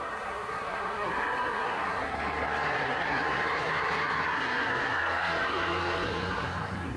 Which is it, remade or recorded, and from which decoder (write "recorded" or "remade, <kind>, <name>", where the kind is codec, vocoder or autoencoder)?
remade, codec, SNAC